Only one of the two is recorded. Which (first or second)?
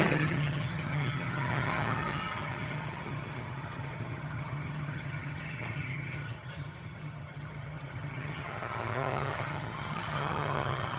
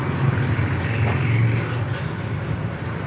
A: second